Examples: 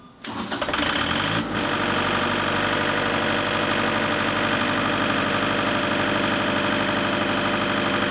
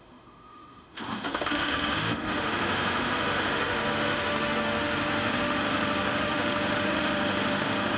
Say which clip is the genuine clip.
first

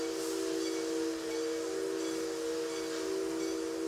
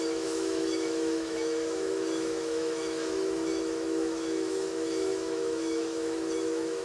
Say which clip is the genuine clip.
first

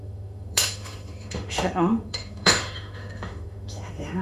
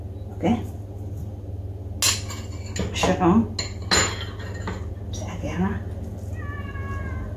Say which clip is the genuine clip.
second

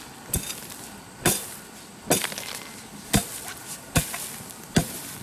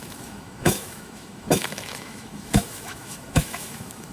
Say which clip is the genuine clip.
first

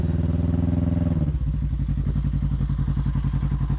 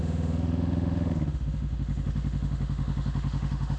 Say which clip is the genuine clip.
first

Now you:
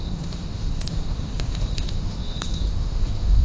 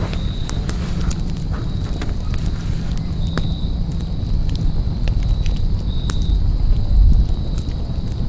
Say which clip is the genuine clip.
second